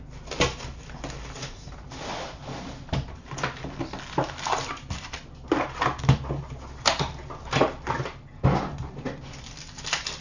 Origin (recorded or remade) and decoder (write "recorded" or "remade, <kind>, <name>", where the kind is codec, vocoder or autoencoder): recorded